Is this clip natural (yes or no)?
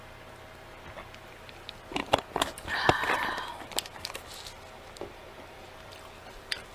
yes